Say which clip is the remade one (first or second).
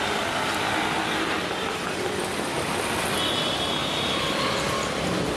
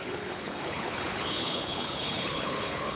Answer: second